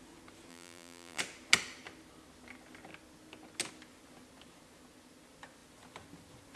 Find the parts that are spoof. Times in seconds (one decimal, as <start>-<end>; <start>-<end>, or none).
0.5-1.2